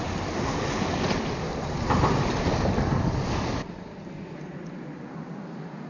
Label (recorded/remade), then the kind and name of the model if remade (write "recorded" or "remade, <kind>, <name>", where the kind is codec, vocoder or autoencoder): recorded